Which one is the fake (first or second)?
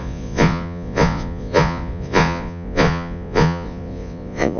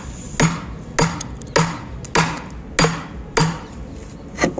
first